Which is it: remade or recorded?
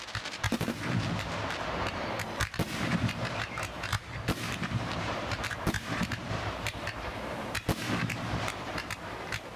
remade